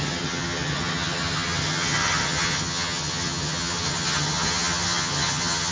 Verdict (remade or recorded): remade